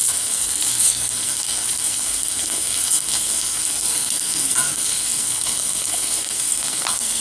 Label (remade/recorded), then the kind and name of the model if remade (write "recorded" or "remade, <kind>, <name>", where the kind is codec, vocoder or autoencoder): remade, codec, SNAC